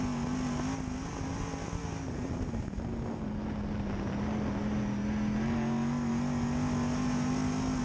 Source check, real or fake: real